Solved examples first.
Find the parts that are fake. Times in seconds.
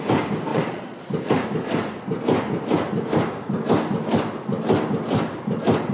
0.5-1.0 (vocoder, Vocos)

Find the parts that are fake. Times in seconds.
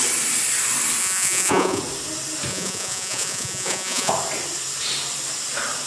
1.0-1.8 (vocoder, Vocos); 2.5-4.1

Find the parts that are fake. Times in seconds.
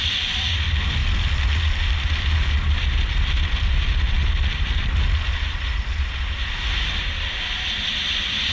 none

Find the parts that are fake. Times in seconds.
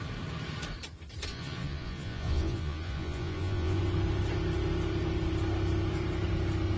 1.3-3.8 (vocoder, Vocos)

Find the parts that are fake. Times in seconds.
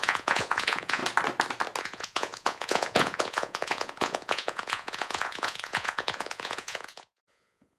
0.0-1.0 (vocoder, Vocos); 1.8-7.8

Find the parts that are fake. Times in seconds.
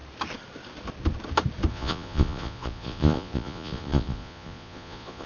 1.7-5.3 (vocoder, Vocos)